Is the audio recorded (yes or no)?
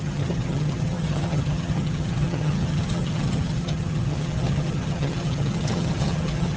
no